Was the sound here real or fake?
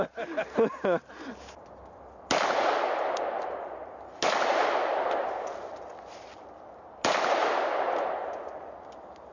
real